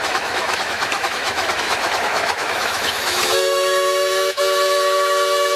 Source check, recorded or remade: remade